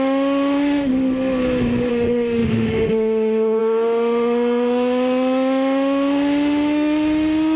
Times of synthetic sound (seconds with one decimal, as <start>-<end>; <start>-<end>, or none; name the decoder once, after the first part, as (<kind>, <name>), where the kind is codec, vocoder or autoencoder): 0.0-0.9 (autoencoder, DAC-VAE); 1.9-7.6